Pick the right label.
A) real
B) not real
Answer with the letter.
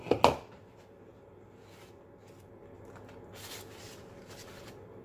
A